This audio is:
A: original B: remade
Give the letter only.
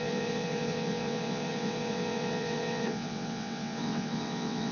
B